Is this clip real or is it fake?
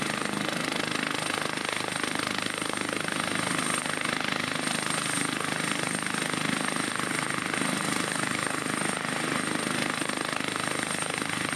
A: real